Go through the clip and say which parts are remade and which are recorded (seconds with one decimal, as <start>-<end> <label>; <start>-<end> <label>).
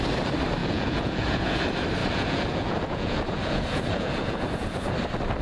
0.0-0.6 recorded; 0.6-1.6 remade; 1.6-2.0 recorded; 2.0-4.9 remade; 4.9-5.4 recorded